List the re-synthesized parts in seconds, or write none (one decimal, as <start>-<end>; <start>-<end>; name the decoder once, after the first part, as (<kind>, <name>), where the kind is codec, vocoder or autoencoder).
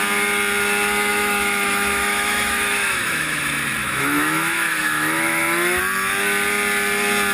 1.1-3.4 (autoencoder, DAC-VAE); 3.8-5.8